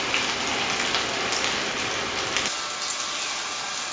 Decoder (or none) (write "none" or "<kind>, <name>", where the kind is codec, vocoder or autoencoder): none